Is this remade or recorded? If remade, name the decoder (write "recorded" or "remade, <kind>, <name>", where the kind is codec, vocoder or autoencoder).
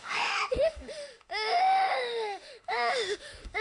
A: remade, autoencoder, DAC-VAE